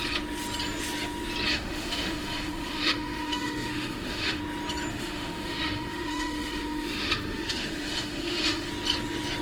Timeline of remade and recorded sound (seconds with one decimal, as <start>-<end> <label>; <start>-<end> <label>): 0.0-1.5 recorded; 1.5-4.4 remade; 4.4-4.9 recorded; 4.9-8.7 remade; 8.7-9.4 recorded